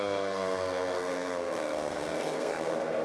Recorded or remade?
remade